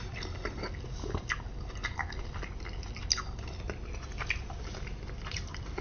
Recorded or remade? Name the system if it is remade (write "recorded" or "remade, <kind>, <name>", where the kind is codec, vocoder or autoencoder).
recorded